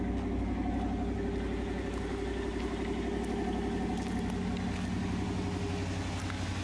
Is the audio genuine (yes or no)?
yes